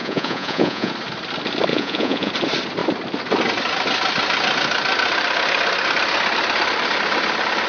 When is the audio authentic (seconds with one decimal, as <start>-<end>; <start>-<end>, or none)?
0.9-1.7; 2.3-7.7